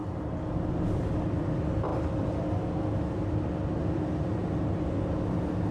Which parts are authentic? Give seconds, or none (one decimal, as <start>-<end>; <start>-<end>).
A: 0.0-5.7

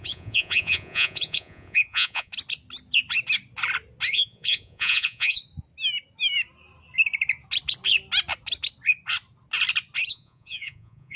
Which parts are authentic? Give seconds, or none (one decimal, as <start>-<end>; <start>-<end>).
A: 2.3-4.1; 5.4-10.1

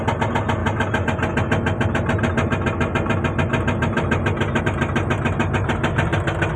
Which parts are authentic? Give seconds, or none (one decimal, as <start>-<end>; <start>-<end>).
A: 0.0-6.6

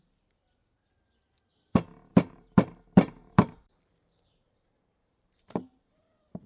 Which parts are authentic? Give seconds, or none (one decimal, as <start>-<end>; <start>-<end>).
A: 0.0-2.1; 6.0-6.5